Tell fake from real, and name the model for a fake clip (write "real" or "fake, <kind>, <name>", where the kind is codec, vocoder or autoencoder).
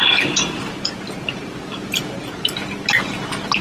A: real